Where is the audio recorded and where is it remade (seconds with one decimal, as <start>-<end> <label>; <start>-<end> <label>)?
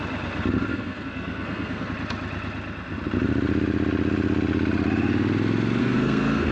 0.0-0.7 recorded; 0.7-1.9 remade; 1.9-5.8 recorded; 5.8-6.5 remade